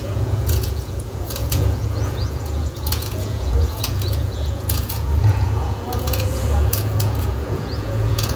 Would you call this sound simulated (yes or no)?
yes